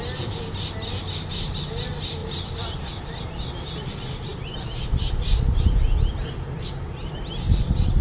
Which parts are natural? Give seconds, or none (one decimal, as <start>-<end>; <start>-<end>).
0.0-2.2; 3.2-8.0

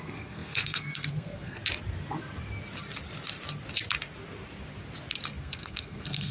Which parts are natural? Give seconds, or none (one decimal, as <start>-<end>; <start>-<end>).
1.6-5.4

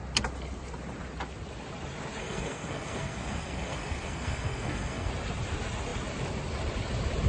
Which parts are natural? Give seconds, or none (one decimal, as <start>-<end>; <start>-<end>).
0.0-2.2; 5.1-7.3

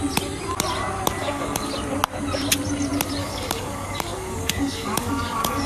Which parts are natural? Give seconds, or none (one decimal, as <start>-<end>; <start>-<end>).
0.0-1.2; 1.7-3.2

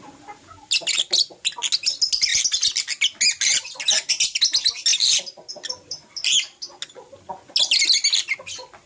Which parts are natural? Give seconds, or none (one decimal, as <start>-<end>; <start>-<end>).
0.0-8.9

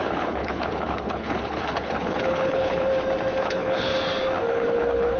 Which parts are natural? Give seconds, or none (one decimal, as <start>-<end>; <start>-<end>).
2.9-3.4; 3.9-4.5

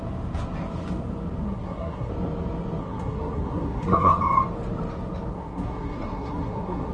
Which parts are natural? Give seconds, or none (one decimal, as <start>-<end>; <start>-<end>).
0.0-1.4; 2.1-2.8; 4.2-5.3

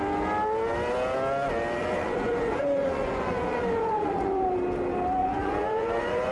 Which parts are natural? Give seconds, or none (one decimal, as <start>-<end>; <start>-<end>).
0.0-1.8; 4.5-5.2